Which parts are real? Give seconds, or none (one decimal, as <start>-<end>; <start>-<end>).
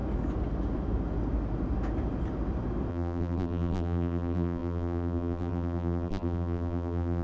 0.0-2.9